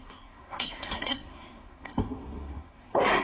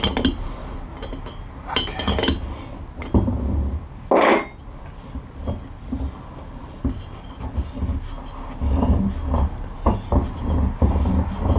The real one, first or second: second